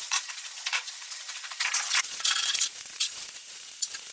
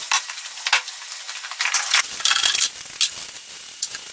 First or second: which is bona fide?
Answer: second